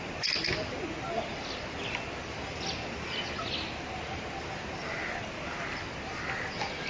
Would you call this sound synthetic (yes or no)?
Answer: no